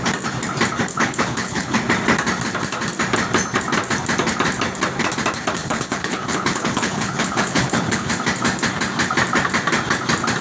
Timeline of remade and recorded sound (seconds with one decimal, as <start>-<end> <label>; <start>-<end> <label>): 0.0-0.9 recorded; 0.9-1.8 remade; 1.8-5.6 recorded; 5.6-8.1 remade; 8.1-10.4 recorded